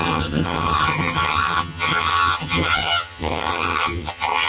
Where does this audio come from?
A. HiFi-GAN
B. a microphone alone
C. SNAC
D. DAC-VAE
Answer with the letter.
A